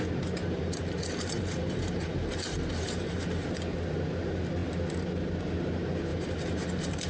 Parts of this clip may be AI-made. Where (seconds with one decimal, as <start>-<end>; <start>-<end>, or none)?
0.4-3.4; 6.1-7.1